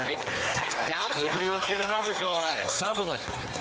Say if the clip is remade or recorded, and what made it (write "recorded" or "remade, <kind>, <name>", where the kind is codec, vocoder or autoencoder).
remade, codec, SNAC